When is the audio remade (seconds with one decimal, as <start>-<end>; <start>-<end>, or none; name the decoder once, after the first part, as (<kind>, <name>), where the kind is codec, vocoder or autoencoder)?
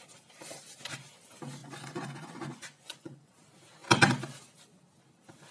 1.6-3.3 (vocoder, Vocos)